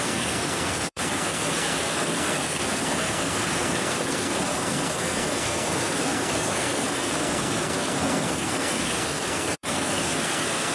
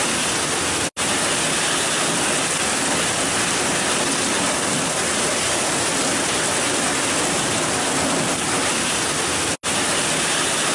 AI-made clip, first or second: first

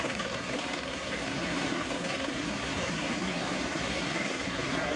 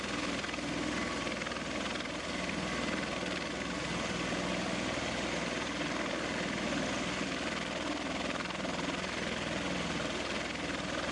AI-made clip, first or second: first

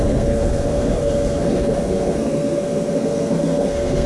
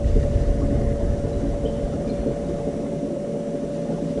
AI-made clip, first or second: first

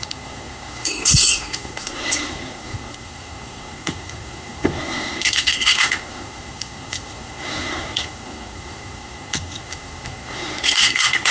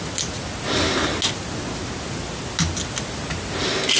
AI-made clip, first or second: first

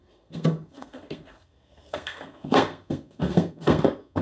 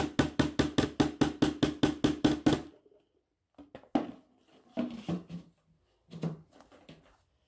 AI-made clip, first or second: first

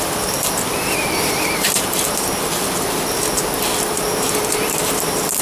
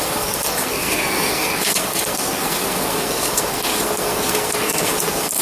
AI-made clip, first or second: second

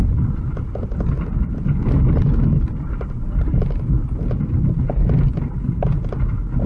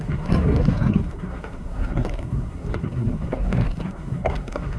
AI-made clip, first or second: second